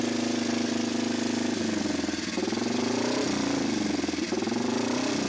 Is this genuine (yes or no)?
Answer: yes